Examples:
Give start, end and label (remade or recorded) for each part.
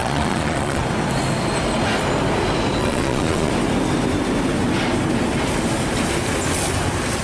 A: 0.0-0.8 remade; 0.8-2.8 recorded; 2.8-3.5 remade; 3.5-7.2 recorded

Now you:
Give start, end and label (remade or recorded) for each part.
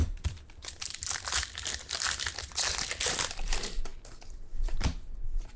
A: 0.0-0.8 remade; 0.8-5.6 recorded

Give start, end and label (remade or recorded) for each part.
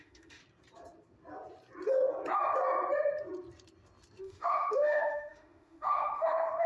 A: 0.0-0.4 remade; 0.4-4.2 recorded; 4.2-6.7 remade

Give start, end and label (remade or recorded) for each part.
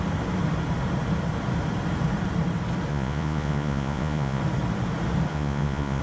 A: 0.0-2.9 recorded; 2.9-4.4 remade; 4.4-5.3 recorded; 5.3-6.0 remade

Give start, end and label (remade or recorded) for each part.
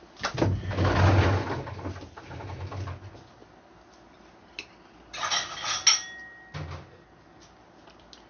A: 0.0-8.3 recorded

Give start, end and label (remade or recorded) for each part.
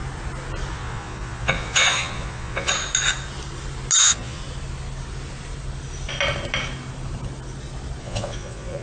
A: 0.0-0.7 recorded; 0.7-2.7 remade; 2.7-4.0 recorded; 4.0-4.4 remade; 4.4-8.0 recorded; 8.0-8.8 remade